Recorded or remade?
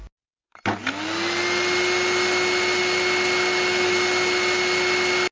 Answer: recorded